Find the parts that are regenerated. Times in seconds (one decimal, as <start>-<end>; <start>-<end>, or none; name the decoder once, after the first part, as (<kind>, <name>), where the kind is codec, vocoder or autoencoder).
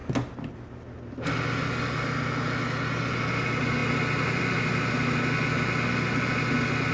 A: none